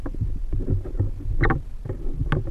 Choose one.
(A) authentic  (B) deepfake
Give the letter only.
A